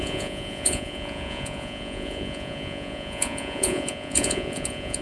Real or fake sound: fake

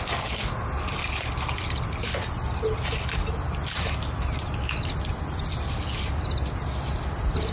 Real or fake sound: real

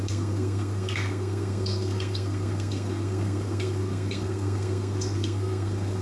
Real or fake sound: fake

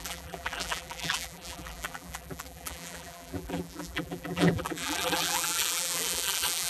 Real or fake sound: fake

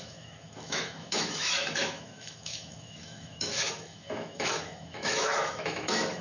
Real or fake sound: fake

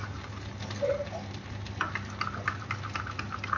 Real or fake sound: real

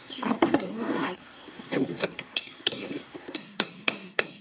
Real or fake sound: fake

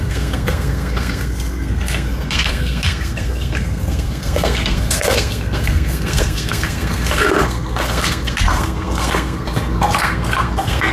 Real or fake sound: fake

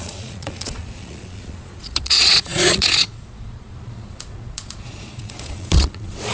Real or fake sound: fake